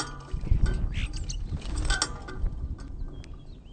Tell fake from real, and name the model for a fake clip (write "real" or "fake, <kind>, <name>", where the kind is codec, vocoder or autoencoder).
real